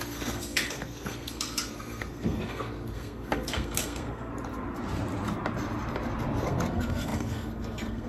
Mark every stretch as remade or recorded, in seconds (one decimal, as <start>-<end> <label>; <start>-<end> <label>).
0.0-4.3 remade; 4.3-6.4 recorded; 6.4-8.1 remade